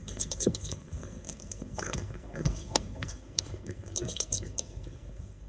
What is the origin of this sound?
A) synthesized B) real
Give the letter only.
A